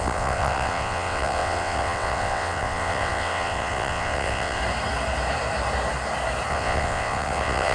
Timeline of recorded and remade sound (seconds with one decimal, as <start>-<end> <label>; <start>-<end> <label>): 0.0-4.6 remade; 4.6-6.5 recorded; 6.5-7.7 remade